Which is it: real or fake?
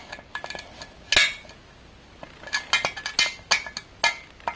real